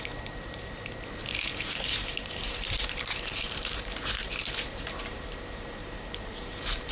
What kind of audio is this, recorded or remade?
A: remade